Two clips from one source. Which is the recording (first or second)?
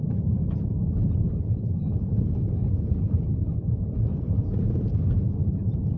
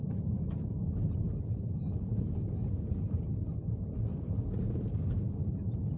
second